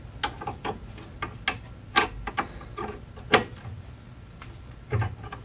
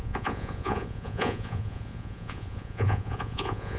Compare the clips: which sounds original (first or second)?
first